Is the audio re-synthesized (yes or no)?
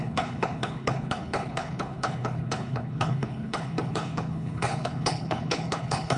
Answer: yes